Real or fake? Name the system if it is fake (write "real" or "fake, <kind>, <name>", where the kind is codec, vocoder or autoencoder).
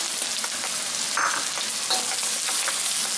real